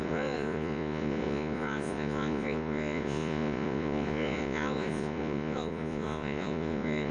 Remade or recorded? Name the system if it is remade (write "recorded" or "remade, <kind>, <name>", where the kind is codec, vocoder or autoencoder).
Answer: remade, vocoder, Vocos